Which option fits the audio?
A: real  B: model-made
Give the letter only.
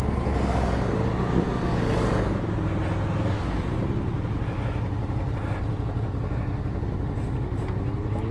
A